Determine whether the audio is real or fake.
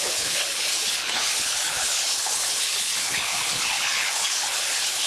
fake